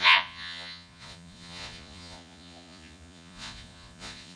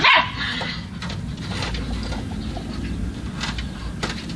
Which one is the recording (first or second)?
second